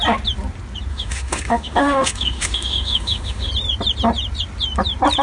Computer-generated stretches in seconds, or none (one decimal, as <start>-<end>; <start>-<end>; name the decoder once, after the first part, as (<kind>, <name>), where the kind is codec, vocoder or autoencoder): 0.9-3.5 (autoencoder, DAC-VAE)